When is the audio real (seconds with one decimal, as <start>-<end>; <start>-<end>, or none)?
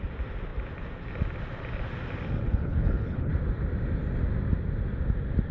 0.0-2.4; 3.3-5.5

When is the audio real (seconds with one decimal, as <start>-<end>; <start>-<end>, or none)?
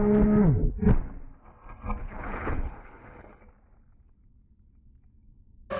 0.0-2.0; 3.4-5.8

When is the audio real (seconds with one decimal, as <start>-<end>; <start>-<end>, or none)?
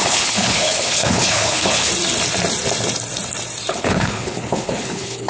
1.9-3.7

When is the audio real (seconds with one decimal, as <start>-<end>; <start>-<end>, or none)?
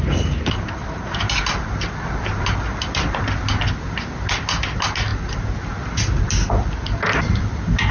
0.0-7.9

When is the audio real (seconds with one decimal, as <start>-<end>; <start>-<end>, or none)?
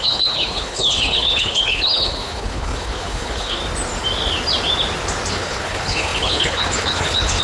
3.6-5.3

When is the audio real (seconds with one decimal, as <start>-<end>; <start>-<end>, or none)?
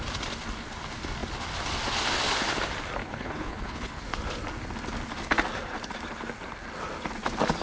0.0-3.0; 4.0-7.6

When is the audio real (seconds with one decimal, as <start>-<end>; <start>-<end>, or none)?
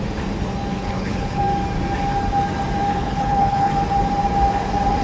0.0-0.7; 1.4-2.9; 3.7-5.0